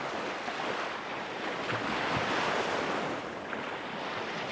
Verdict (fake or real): real